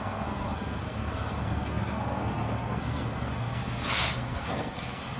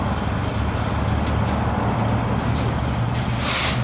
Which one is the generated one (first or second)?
first